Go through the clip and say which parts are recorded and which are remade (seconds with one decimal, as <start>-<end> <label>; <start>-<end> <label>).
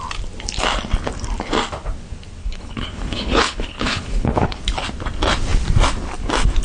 0.0-2.4 recorded; 2.4-4.6 remade; 4.6-6.6 recorded